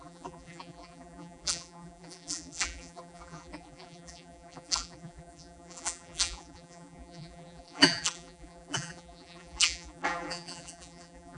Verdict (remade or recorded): remade